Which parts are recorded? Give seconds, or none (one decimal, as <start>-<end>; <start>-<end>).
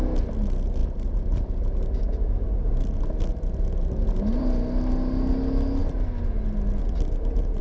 0.0-7.6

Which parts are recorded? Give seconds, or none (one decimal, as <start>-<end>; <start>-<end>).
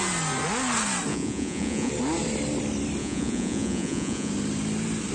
0.0-1.1; 1.9-3.0; 4.3-5.1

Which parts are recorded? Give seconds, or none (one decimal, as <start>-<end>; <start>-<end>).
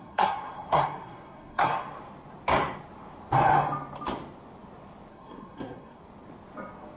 1.7-5.1; 6.0-7.0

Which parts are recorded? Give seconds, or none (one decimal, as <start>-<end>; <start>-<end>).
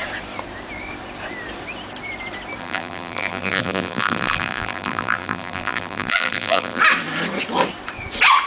0.0-2.6; 6.8-8.5